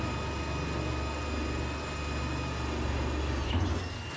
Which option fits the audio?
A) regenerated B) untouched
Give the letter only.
B